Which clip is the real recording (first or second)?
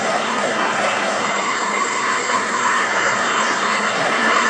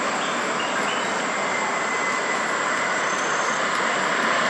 second